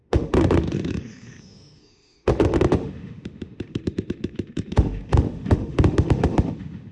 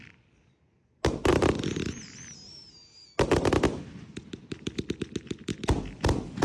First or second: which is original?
second